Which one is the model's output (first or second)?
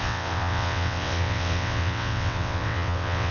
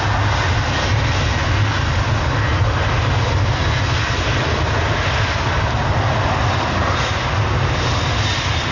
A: first